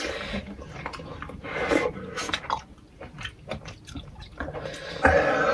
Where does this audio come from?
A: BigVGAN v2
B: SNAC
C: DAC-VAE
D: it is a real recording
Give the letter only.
D